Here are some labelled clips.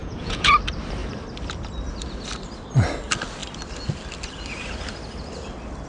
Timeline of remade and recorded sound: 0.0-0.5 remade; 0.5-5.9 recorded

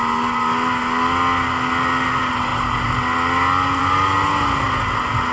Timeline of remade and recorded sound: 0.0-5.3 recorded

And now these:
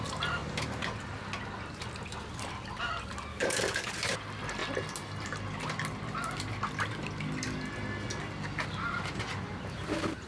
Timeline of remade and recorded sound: 0.0-3.3 recorded; 3.3-3.9 remade; 3.9-10.3 recorded

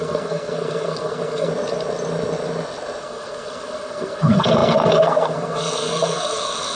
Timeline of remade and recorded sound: 0.0-1.5 remade; 1.5-3.0 recorded; 3.0-6.8 remade

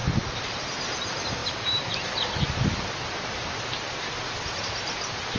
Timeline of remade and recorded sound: 0.0-5.4 recorded

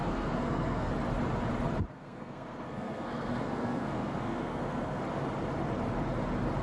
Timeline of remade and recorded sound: 0.0-0.9 remade; 0.9-1.9 recorded; 1.9-5.0 remade; 5.0-6.6 recorded